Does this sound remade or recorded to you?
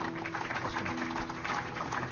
recorded